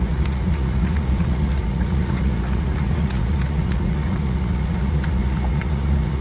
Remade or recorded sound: remade